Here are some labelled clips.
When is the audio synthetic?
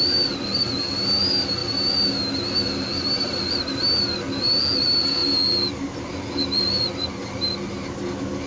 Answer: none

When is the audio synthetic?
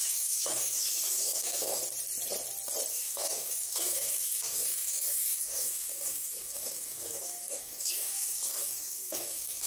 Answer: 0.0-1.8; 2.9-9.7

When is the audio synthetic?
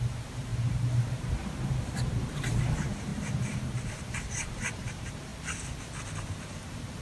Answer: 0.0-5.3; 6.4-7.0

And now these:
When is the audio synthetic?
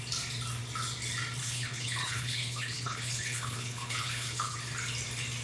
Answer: 1.4-4.6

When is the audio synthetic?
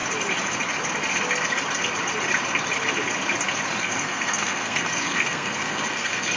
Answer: 3.8-6.4